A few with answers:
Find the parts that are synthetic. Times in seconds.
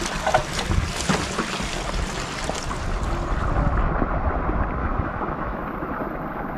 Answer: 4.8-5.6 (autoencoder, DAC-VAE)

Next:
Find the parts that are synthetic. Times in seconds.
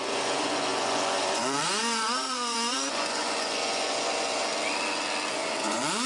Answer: 0.0-4.5 (vocoder, Vocos); 5.3-6.1